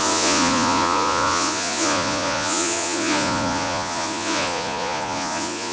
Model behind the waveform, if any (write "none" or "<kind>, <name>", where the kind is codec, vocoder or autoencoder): vocoder, Vocos